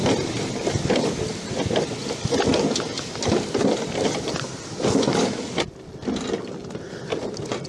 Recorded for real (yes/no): no